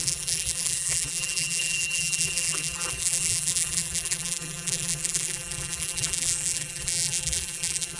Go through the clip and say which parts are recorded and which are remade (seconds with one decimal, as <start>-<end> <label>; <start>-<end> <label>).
0.0-8.0 remade